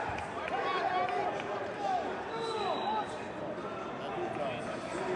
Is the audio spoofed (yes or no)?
no